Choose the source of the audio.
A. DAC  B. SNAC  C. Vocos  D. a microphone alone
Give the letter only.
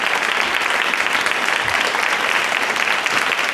D